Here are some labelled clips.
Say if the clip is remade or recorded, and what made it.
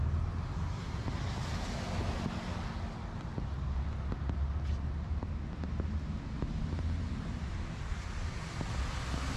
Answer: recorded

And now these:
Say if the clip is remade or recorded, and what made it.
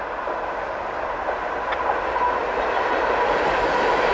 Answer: recorded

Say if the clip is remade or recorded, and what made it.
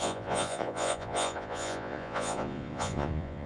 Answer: remade, vocoder, Vocos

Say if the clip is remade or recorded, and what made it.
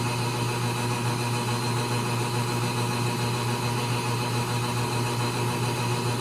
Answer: recorded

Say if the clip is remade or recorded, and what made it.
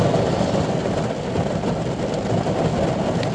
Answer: recorded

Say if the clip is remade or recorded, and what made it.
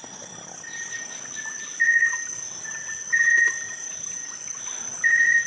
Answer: recorded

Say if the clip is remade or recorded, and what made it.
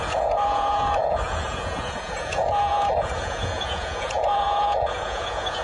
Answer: remade, vocoder, Vocos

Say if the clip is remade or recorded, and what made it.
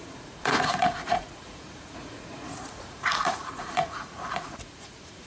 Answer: remade, vocoder, Vocos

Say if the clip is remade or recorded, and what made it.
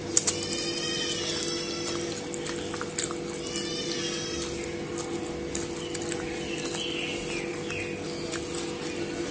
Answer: recorded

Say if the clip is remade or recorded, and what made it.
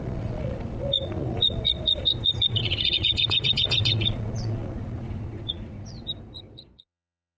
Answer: remade, vocoder, Vocos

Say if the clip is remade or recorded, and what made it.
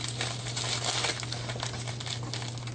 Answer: recorded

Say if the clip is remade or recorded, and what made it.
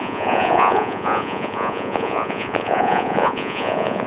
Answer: remade, vocoder, Vocos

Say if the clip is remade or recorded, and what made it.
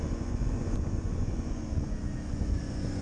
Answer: remade, vocoder, Vocos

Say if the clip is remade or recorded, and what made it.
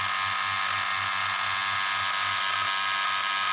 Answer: recorded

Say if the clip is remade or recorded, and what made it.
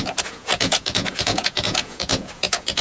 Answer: remade, vocoder, Vocos